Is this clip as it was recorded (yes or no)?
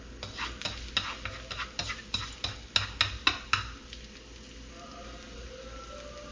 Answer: yes